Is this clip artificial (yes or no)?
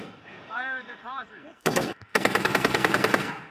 yes